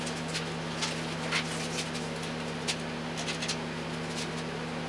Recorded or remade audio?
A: recorded